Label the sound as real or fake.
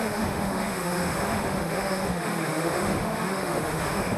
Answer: fake